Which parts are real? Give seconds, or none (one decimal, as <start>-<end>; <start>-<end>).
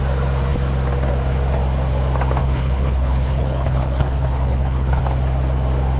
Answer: 0.0-2.4; 5.0-6.0